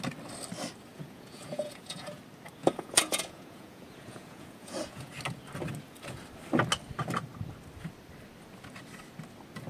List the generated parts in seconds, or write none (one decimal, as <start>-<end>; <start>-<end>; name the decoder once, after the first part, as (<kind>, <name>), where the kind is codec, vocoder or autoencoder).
0.9-2.2 (vocoder, Vocos); 2.6-5.1